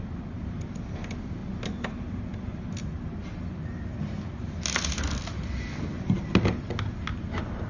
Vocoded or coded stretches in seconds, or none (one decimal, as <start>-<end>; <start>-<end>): none